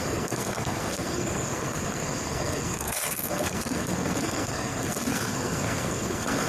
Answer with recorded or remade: remade